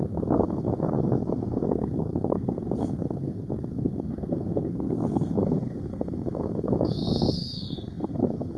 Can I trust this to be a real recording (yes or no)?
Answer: no